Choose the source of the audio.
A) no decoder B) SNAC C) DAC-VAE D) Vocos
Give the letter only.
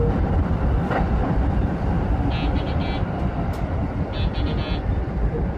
A